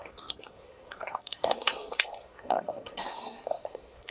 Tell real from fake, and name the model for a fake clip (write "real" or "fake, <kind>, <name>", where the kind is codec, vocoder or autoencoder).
fake, codec, SNAC